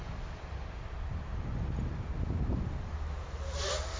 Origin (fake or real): real